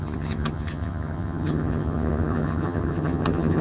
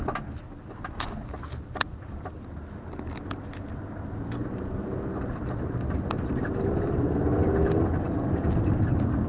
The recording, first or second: second